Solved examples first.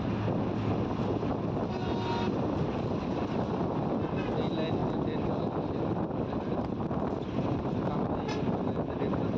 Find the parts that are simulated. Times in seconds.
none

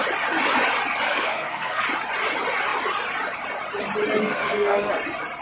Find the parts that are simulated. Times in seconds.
1.1-1.8 (codec, SNAC); 4.2-4.9

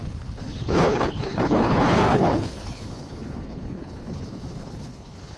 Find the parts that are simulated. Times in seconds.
0.0-5.4 (codec, HILCodec)

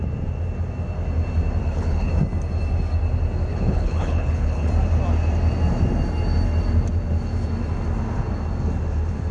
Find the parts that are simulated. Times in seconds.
1.6-2.1 (codec, HILCodec); 3.5-4.7

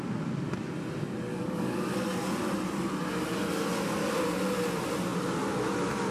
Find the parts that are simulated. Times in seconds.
1.3-1.9 (codec, DAC)